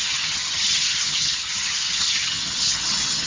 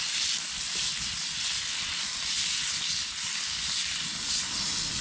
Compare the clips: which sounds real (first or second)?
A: second